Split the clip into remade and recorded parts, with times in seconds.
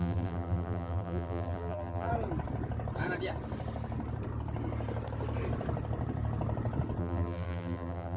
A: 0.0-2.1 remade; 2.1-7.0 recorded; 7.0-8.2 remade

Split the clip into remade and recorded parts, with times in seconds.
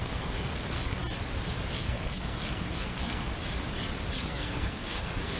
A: 0.0-1.0 remade; 1.0-1.7 recorded; 1.7-3.3 remade; 3.3-4.1 recorded; 4.1-5.4 remade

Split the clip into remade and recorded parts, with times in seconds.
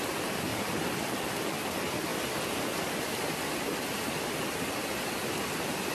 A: 0.0-5.9 recorded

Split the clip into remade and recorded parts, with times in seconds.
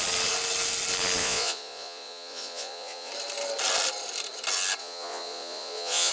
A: 0.0-1.2 recorded; 1.2-3.1 remade; 3.1-4.8 recorded; 4.8-6.1 remade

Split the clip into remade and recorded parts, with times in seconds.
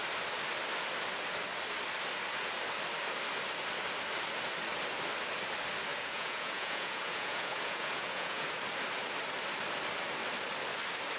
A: 0.0-5.9 recorded; 5.9-8.6 remade; 8.6-11.2 recorded